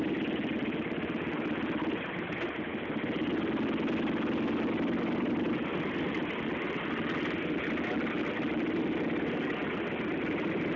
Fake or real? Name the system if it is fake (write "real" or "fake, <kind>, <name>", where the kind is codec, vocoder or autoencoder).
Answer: real